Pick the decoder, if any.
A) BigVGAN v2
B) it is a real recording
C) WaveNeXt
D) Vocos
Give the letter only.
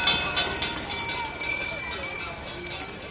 B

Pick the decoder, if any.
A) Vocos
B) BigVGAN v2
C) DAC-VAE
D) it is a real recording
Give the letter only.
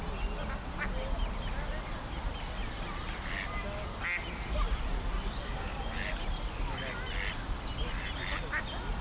D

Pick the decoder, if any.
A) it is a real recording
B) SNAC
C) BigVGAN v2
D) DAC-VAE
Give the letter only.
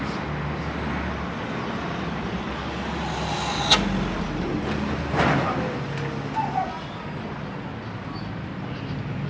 A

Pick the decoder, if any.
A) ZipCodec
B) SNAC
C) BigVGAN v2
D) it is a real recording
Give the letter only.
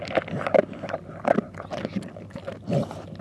D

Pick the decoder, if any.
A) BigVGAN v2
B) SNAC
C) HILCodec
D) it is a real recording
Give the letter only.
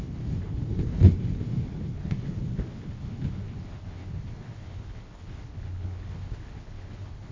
C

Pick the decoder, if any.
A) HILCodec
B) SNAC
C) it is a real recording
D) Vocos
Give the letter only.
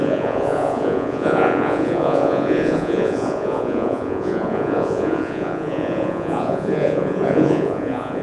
D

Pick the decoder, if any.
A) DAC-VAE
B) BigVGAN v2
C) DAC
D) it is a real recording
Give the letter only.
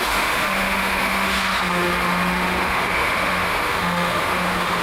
A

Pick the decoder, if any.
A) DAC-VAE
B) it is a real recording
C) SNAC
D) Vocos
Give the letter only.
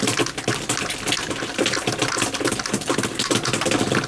B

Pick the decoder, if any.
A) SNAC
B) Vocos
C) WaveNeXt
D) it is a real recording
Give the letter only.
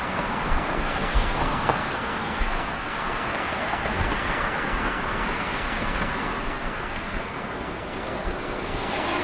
A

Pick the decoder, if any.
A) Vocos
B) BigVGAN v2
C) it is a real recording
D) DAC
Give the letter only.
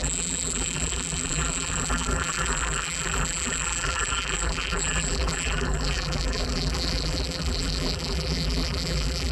B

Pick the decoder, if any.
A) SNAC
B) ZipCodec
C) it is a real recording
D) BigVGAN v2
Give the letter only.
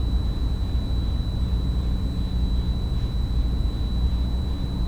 C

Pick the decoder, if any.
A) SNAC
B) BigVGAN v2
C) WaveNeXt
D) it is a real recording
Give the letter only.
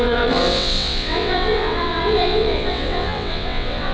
C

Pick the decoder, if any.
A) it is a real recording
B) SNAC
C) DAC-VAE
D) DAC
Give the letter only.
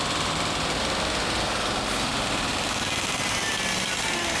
A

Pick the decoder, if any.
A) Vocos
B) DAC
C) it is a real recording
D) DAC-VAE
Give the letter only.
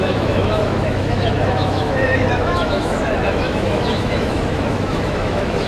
D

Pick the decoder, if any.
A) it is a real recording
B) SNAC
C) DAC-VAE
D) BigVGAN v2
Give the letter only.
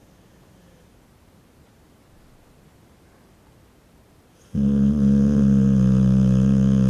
A